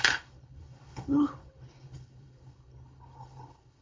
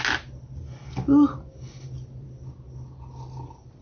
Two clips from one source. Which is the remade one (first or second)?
first